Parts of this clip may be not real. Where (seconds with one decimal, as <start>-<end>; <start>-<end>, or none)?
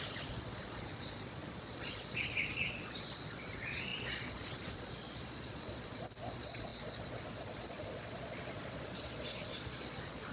0.0-10.3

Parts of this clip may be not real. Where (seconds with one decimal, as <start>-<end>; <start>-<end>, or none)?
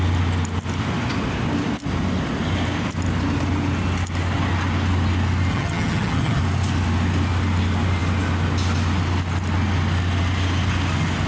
5.5-6.4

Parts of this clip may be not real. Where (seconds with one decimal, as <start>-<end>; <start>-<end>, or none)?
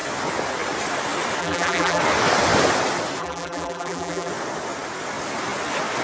1.4-2.0; 3.2-4.3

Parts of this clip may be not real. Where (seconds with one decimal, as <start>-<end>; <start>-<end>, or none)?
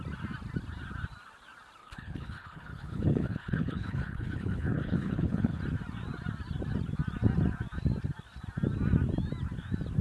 1.8-5.6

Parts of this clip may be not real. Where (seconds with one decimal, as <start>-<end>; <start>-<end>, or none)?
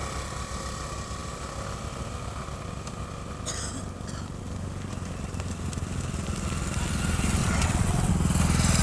7.4-8.1